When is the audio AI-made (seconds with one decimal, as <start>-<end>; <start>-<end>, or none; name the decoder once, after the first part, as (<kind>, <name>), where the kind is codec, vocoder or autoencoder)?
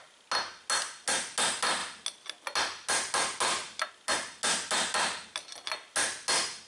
none